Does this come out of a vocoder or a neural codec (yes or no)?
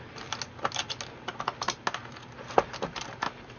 no